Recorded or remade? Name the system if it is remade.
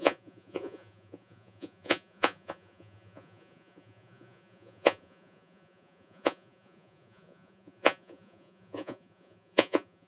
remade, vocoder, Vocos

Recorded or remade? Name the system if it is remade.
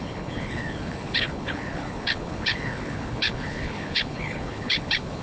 remade, codec, HILCodec